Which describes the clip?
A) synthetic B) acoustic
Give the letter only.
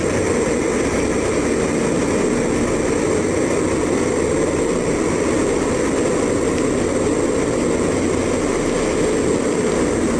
B